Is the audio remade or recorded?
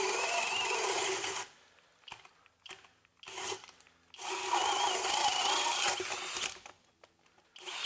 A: recorded